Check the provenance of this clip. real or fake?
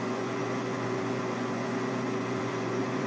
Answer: fake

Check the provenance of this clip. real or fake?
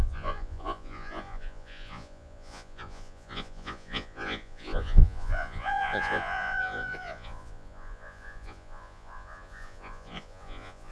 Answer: fake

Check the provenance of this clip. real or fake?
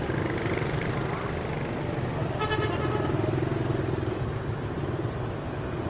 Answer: real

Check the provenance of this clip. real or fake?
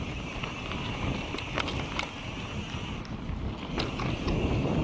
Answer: real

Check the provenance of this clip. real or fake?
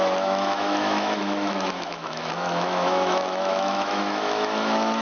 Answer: fake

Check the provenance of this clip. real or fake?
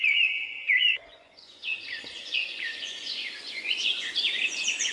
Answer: fake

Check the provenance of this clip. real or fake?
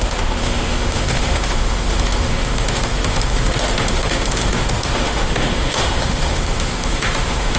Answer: fake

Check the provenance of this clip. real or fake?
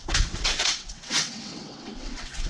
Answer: fake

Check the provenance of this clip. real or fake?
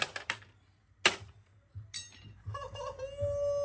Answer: real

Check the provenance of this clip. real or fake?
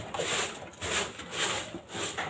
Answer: real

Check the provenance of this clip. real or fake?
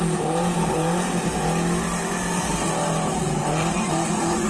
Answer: fake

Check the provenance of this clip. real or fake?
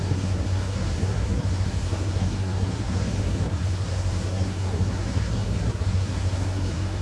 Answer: fake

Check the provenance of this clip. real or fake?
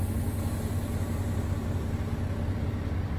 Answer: real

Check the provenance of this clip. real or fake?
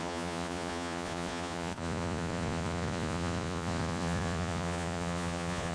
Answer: fake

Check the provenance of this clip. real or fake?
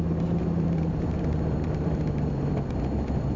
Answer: fake